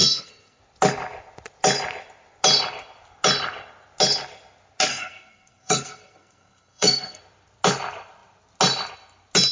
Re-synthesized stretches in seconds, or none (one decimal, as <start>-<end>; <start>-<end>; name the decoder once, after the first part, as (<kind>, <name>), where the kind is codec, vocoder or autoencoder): 0.0-0.6 (codec, SNAC); 4.9-7.2